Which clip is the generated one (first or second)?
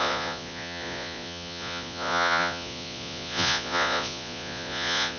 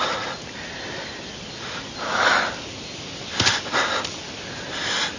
first